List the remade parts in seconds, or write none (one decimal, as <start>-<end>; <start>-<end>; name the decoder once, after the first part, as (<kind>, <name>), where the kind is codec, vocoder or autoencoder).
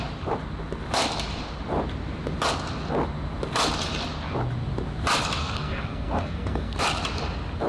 5.4-6.8 (codec, SNAC)